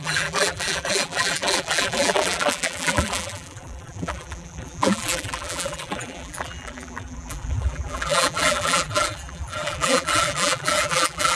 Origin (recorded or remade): remade